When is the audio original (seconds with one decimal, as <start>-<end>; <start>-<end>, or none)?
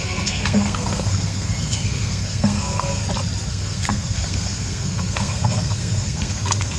3.0-3.5